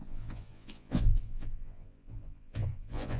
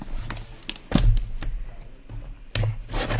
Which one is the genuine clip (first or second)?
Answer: second